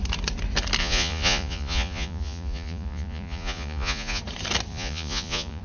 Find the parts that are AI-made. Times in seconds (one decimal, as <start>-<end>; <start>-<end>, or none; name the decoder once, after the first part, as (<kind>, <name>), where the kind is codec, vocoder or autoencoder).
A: 0.8-4.2 (vocoder, Vocos); 4.7-5.6